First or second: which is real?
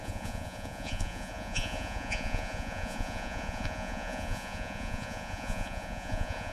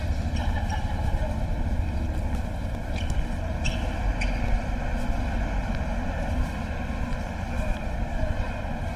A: second